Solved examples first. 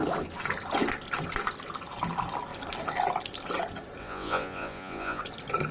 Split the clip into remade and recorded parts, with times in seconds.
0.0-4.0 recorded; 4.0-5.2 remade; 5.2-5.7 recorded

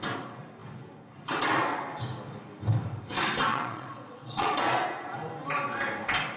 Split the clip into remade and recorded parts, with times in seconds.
0.0-3.5 recorded; 3.5-4.6 remade; 4.6-6.4 recorded

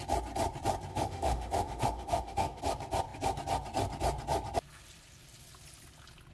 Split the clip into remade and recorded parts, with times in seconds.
0.0-0.9 recorded; 0.9-2.6 remade; 2.6-6.3 recorded

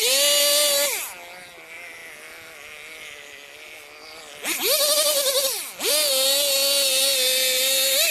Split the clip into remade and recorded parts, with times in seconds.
0.0-8.1 recorded

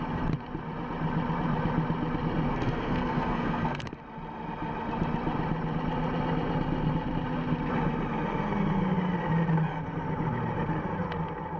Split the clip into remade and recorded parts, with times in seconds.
0.0-2.5 recorded; 2.5-3.8 remade; 3.8-11.6 recorded

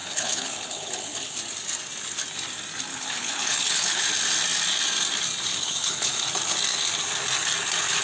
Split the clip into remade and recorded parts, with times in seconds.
0.0-1.3 remade; 1.3-2.9 recorded; 2.9-4.0 remade; 4.0-5.5 recorded; 5.5-6.1 remade; 6.1-8.0 recorded